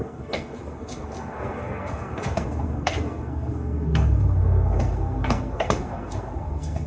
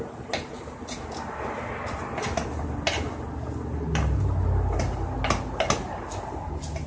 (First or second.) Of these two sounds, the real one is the second